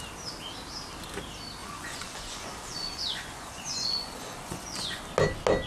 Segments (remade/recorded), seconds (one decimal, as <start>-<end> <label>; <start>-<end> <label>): 0.0-1.6 recorded; 1.6-5.0 remade; 5.0-5.7 recorded